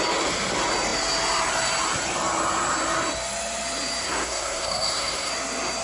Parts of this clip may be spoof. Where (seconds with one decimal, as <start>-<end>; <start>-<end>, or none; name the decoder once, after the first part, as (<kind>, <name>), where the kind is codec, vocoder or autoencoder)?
4.0-5.3 (codec, SNAC)